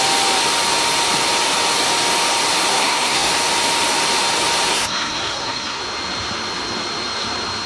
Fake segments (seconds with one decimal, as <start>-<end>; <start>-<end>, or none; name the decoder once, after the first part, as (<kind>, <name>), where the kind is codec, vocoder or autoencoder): 2.7-3.3 (codec, SNAC); 4.7-5.8